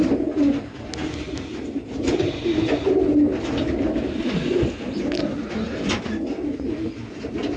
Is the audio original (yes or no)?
yes